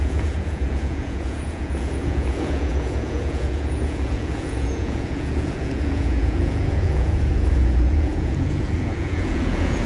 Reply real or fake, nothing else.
fake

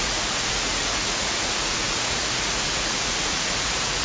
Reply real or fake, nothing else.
fake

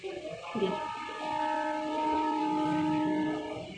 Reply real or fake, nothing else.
real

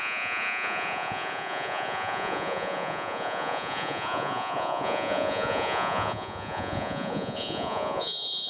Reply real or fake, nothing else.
fake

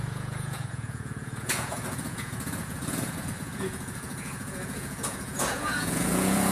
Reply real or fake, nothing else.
fake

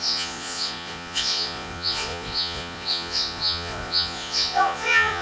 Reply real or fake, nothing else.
fake